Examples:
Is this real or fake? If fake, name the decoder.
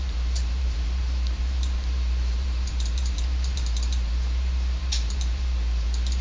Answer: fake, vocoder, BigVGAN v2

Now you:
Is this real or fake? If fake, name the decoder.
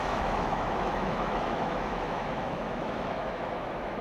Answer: fake, autoencoder, DAC-VAE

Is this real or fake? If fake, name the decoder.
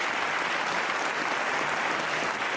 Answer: real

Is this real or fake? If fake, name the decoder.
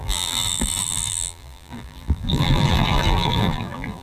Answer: fake, vocoder, BigVGAN v2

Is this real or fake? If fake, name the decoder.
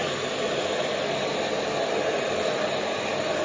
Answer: real